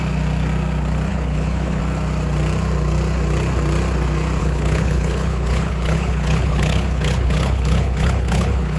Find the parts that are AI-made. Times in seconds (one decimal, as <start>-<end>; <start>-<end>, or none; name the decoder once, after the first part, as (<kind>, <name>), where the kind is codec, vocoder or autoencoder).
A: 1.1-1.8 (codec, HILCodec); 4.4-8.8